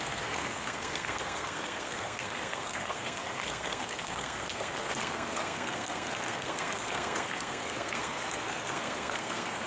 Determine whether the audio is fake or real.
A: fake